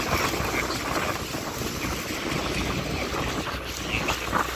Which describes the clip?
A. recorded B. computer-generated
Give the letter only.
A